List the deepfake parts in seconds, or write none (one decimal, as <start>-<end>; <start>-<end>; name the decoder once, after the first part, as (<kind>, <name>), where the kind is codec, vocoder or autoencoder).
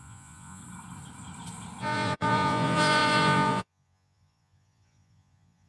0.0-0.6 (vocoder, Vocos); 1.8-5.7